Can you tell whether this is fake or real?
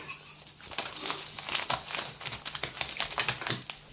real